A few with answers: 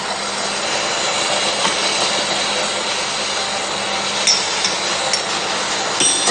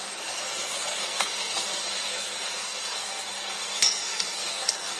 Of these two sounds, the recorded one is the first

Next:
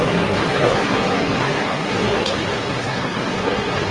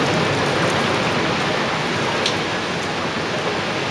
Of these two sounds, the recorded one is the second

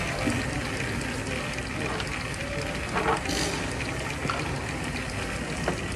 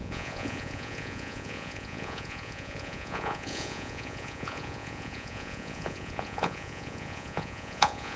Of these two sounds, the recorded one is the first